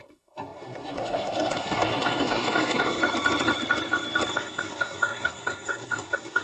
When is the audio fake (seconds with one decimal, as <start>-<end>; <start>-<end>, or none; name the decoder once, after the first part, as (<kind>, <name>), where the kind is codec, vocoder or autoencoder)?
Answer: 0.0-3.0 (codec, SNAC); 4.3-6.4

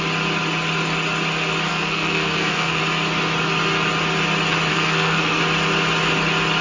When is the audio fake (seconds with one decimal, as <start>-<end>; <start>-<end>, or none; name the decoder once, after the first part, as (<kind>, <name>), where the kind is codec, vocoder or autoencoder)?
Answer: 1.7-2.8 (codec, SNAC); 4.7-5.4

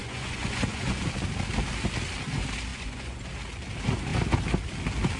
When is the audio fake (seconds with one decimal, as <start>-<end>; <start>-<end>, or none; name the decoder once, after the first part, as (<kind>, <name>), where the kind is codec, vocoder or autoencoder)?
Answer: 0.0-1.0 (vocoder, Vocos); 2.7-3.3

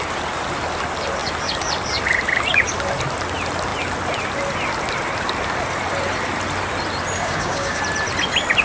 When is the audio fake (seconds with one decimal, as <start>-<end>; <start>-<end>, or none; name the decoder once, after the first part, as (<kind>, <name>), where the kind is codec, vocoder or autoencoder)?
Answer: 7.2-7.8 (codec, DAC)

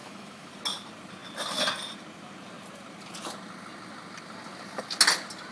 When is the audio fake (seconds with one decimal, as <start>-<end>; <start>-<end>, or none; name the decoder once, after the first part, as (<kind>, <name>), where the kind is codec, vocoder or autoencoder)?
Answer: 0.0-0.5 (autoencoder, DAC-VAE)